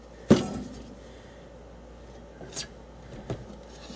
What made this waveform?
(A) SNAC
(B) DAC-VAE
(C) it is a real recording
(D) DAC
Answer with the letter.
C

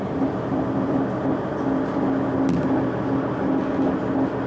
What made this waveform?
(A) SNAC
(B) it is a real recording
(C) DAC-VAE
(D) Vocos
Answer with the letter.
B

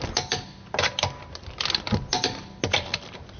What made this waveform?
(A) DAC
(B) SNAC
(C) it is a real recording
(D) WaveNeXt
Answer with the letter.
C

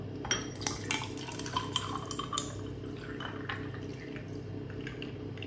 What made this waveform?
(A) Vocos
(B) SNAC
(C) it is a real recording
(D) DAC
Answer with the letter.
C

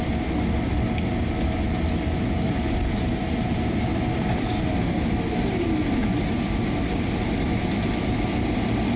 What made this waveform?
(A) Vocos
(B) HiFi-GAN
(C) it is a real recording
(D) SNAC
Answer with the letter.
C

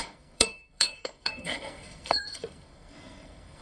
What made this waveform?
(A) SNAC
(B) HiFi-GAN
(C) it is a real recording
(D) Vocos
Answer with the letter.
A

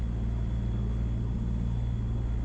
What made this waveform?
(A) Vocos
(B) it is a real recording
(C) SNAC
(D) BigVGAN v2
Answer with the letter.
B